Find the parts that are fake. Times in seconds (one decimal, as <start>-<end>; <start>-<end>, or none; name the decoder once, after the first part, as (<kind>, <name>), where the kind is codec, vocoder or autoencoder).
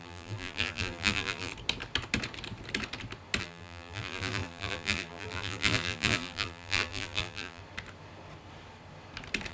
0.0-1.5 (vocoder, BigVGAN v2); 3.4-7.6